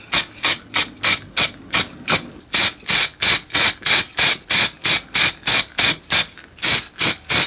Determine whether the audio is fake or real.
real